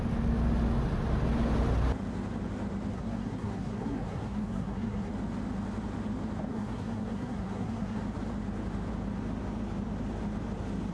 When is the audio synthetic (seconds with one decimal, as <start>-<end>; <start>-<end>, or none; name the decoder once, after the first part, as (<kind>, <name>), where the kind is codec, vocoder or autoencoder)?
2.9-5.1 (codec, SNAC); 6.5-8.0